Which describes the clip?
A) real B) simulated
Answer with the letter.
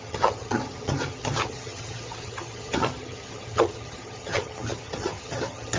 B